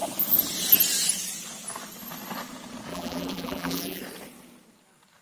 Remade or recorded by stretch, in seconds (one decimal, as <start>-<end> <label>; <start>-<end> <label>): 0.0-2.9 recorded; 2.9-4.0 remade; 4.0-5.2 recorded